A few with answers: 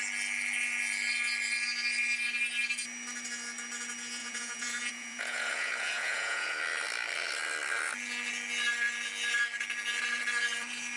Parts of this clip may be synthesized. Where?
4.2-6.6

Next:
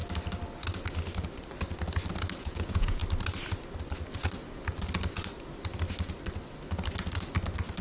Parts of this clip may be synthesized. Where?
2.4-3.0

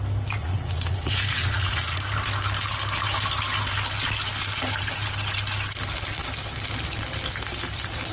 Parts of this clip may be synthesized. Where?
0.4-2.0